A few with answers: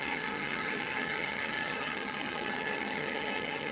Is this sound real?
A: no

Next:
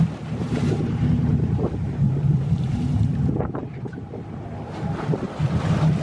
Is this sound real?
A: no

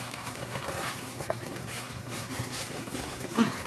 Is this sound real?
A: no